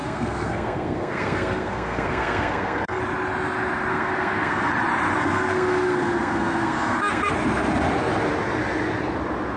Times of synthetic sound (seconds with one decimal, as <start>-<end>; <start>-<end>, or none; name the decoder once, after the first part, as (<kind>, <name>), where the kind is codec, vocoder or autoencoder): 0.0-3.0 (codec, SNAC); 3.9-4.7; 5.2-7.3